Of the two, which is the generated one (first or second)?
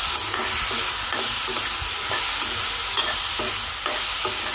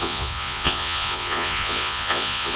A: second